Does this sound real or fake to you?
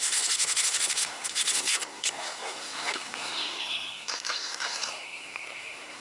fake